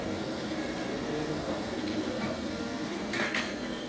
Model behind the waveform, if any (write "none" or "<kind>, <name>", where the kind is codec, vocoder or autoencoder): codec, SNAC